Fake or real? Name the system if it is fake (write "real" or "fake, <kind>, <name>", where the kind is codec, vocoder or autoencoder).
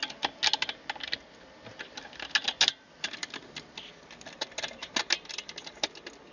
real